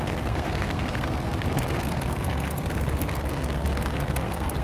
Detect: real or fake fake